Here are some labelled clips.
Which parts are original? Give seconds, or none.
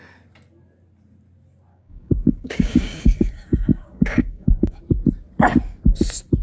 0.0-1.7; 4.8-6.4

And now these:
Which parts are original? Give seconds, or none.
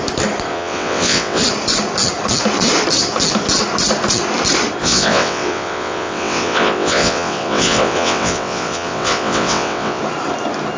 0.0-0.5; 1.4-4.8; 10.0-10.8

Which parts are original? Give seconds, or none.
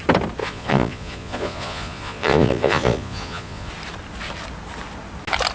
0.0-0.4; 3.7-5.5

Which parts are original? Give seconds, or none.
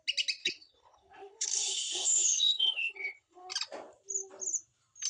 0.0-0.4; 3.5-5.1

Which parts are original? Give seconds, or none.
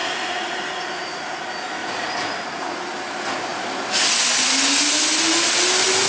1.4-1.8; 2.8-6.1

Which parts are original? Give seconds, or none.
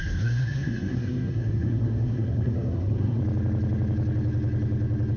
3.2-5.2